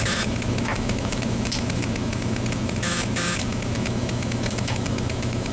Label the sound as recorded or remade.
remade